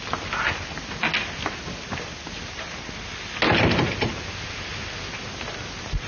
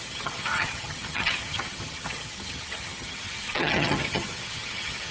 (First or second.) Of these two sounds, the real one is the first